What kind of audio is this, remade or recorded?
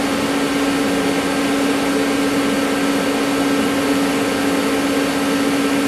recorded